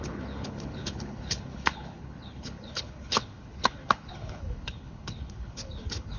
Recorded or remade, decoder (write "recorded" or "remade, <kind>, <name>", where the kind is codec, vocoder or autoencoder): remade, codec, HILCodec